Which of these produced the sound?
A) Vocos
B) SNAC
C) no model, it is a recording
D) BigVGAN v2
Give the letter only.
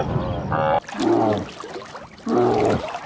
C